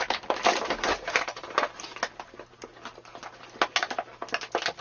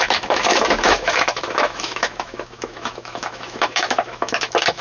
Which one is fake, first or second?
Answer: second